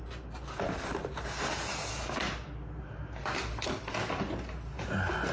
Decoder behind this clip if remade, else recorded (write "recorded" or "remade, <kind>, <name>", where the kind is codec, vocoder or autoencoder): recorded